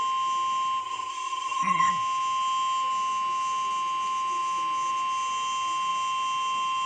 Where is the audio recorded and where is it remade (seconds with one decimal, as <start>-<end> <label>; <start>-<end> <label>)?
0.0-0.8 recorded; 0.8-1.9 remade; 1.9-6.9 recorded